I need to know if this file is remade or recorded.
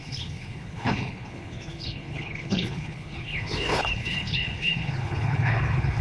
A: remade